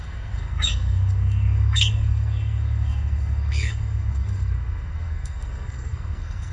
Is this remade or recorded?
remade